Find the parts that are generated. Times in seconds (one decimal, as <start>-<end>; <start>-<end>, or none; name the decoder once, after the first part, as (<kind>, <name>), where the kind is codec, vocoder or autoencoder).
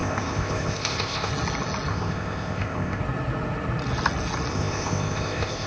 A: 0.0-1.3 (codec, ZipCodec); 1.9-3.0; 4.5-5.7